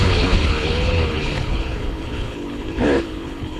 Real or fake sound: fake